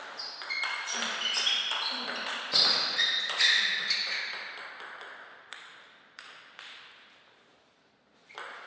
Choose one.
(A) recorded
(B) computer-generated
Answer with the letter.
A